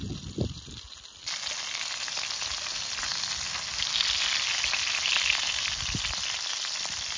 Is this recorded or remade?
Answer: recorded